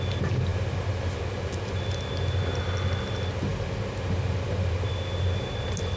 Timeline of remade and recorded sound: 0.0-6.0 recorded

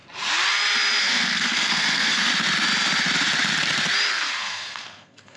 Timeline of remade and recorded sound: 0.0-1.0 recorded; 1.0-2.3 remade; 2.3-4.1 recorded; 4.1-5.4 remade